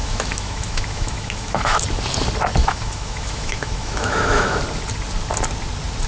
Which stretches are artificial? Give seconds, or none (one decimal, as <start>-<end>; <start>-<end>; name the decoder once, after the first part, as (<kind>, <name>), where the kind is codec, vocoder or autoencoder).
0.0-1.8 (autoencoder, DAC-VAE); 2.6-4.6